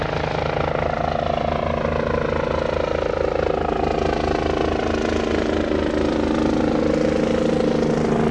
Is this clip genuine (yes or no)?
yes